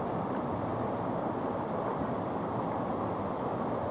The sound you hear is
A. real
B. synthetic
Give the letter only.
A